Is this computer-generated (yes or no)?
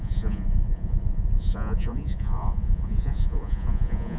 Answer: yes